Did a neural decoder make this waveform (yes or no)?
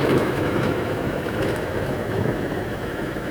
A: yes